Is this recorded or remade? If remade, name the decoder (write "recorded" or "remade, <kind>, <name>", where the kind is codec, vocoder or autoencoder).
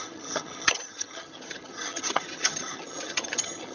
remade, vocoder, HiFi-GAN